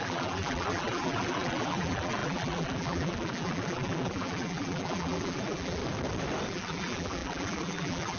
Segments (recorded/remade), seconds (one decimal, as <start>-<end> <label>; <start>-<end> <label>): 0.0-5.8 remade; 5.8-6.5 recorded; 6.5-8.2 remade